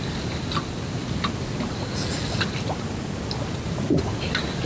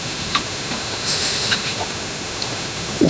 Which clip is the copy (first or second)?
second